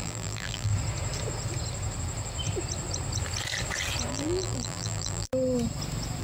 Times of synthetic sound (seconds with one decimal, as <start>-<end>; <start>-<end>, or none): 0.0-0.7; 4.1-5.3